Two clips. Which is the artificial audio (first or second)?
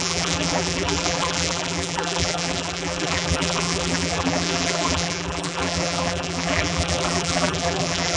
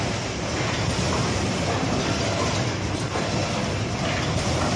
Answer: first